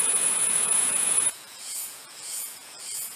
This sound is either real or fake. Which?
fake